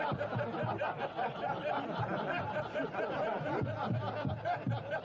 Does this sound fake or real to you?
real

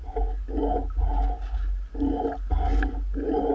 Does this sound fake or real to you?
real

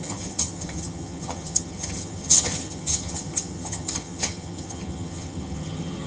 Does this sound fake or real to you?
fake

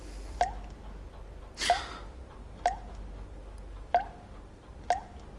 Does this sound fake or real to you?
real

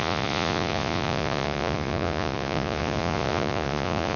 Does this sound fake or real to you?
fake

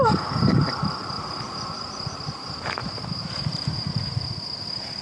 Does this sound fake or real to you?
real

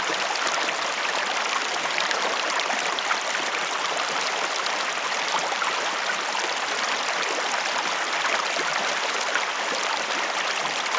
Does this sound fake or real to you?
real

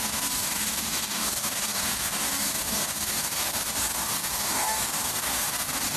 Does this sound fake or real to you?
fake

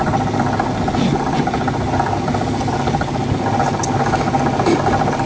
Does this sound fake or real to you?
real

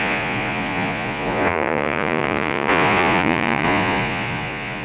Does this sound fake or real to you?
fake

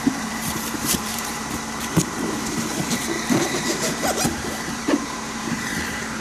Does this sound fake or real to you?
fake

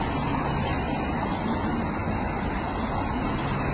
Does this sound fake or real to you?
real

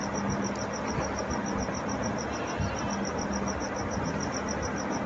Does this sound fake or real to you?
real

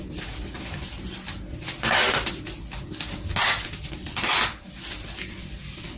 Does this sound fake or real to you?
real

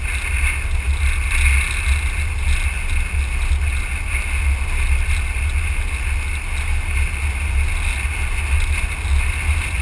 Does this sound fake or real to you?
real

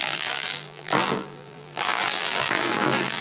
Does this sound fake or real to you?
fake